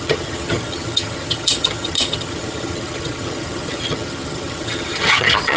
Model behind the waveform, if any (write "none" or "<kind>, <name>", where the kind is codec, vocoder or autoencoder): vocoder, HiFi-GAN